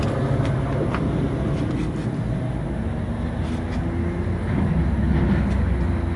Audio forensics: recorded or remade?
recorded